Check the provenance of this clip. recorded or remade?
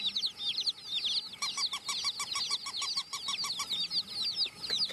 recorded